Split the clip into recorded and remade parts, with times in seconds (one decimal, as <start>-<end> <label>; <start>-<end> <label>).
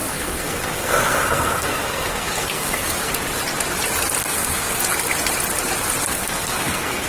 0.0-3.1 remade; 3.1-4.2 recorded; 4.2-4.8 remade; 4.8-6.0 recorded; 6.0-7.1 remade